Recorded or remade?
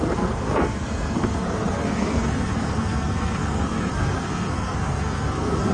remade